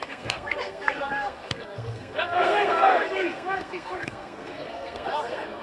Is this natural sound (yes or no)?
no